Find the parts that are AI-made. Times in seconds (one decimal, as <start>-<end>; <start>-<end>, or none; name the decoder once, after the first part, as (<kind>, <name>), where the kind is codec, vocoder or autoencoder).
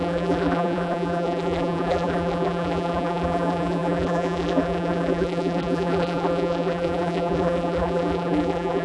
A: 0.0-8.8 (vocoder, BigVGAN v2)